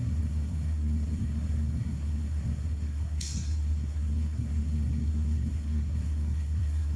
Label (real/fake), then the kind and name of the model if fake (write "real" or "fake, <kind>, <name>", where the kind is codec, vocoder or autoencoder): fake, codec, SNAC